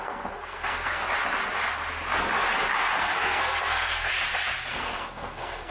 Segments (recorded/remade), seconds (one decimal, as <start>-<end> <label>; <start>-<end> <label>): 0.0-1.0 remade; 1.0-3.0 recorded; 3.0-4.1 remade; 4.1-4.7 recorded; 4.7-5.7 remade